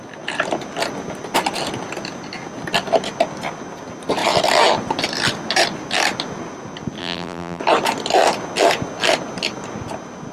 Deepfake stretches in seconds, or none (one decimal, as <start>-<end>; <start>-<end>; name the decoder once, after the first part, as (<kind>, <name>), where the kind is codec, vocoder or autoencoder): 7.0-7.6 (vocoder, BigVGAN v2)